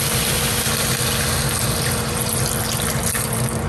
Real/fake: real